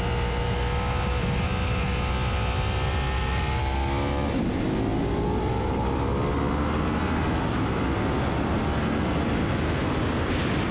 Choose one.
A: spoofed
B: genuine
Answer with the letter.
B